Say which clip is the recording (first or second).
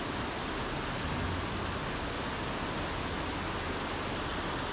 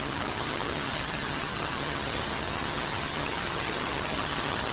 first